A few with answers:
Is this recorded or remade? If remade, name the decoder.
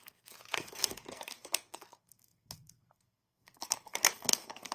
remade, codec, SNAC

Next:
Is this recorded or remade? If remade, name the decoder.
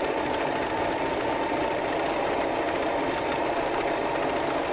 recorded